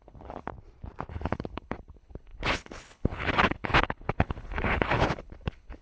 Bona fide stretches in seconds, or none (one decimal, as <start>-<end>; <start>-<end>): 0.5-1.1